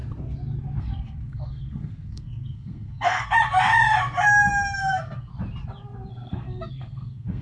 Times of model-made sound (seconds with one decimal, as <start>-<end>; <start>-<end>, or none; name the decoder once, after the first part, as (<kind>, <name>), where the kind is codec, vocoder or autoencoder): 0.8-3.3 (codec, SNAC); 4.8-5.3; 6.1-7.4